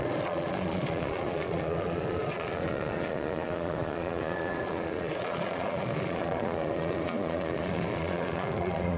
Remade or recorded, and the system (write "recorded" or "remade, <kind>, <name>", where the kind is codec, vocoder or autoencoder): remade, vocoder, Vocos